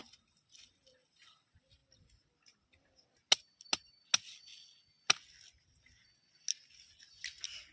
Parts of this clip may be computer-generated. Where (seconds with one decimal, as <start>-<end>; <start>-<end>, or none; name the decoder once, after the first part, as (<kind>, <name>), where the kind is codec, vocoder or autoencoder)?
none